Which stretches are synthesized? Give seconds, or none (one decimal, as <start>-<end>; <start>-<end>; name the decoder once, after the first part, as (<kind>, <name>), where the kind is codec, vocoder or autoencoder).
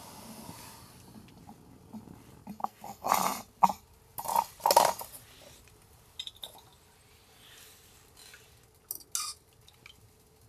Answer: 2.6-3.1 (codec, SNAC)